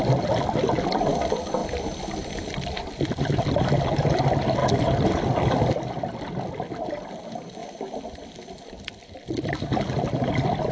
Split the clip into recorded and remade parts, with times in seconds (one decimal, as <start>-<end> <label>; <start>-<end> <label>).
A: 0.0-1.6 recorded; 1.6-3.5 remade; 3.5-7.6 recorded; 7.6-9.5 remade; 9.5-10.7 recorded